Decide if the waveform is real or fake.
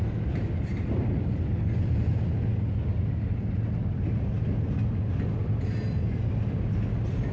real